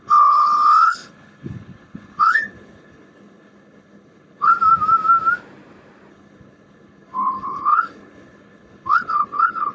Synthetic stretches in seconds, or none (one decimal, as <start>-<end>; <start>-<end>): 0.0-4.5; 6.1-9.7

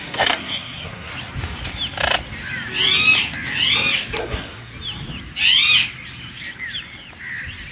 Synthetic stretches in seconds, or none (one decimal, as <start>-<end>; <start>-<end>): 0.0-1.1; 4.2-4.7

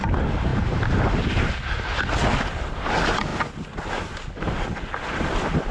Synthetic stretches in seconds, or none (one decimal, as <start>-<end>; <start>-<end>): none

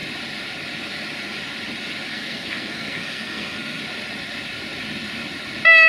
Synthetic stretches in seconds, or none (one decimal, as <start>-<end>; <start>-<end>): 2.1-3.8

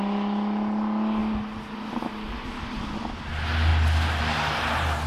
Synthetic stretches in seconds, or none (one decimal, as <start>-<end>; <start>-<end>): none

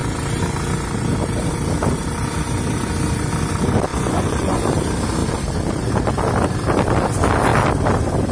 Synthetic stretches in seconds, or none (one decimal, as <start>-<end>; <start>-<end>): 3.9-4.6